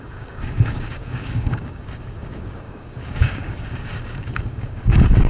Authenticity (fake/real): fake